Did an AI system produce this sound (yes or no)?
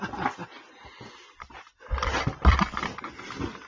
no